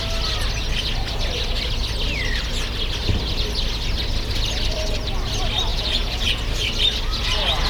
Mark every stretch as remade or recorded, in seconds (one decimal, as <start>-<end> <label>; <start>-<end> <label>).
0.0-5.7 recorded; 5.7-6.4 remade; 6.4-7.1 recorded; 7.1-7.7 remade